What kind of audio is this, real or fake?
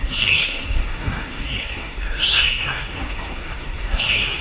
fake